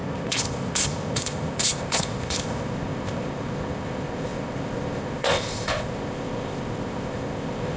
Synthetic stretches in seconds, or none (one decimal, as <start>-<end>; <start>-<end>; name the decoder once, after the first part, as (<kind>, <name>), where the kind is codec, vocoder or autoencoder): 0.0-7.8 (codec, ZipCodec)